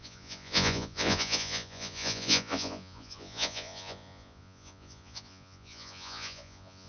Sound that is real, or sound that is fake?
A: fake